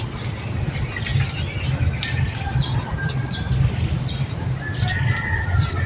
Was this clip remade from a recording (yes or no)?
no